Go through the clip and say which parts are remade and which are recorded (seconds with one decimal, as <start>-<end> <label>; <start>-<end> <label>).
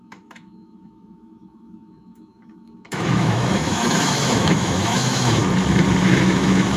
0.0-5.4 remade; 5.4-6.0 recorded; 6.0-6.8 remade